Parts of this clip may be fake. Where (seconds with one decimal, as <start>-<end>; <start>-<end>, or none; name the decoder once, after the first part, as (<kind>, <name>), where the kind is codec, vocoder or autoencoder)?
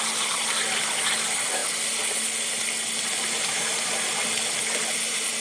none